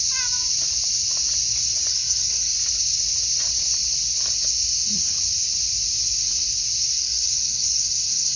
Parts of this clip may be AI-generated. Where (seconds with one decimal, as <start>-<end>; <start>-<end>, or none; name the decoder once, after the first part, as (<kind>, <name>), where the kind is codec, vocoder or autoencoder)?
1.9-2.5 (codec, SNAC); 6.9-8.4